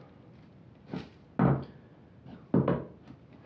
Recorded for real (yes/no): yes